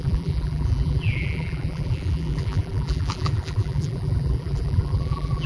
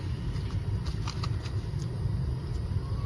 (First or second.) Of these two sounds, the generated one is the first